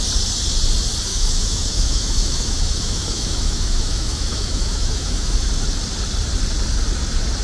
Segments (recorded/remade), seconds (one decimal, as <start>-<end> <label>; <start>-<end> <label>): 0.0-1.1 recorded; 1.1-5.5 remade; 5.5-7.4 recorded